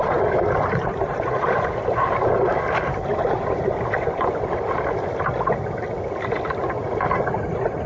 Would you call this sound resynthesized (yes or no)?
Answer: no